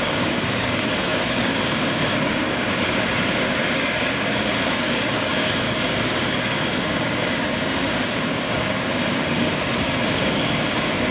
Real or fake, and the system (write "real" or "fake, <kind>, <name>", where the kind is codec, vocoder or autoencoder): fake, codec, DAC